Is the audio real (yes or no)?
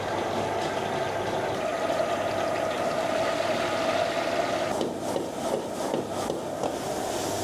yes